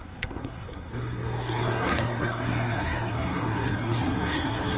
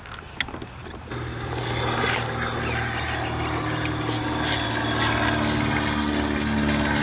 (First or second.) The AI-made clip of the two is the first